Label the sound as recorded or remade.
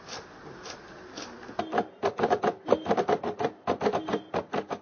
remade